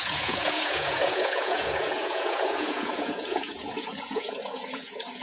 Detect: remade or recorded remade